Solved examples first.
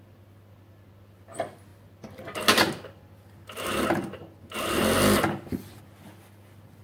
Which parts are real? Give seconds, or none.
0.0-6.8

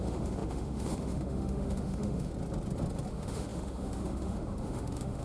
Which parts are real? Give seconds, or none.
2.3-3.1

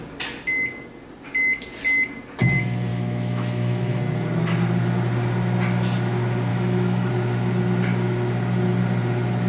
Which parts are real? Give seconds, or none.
0.0-2.9; 4.0-6.5; 7.1-9.5

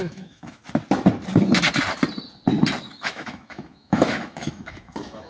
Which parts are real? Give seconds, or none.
0.6-2.8

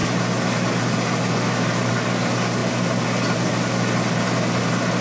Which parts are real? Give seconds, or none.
0.0-5.0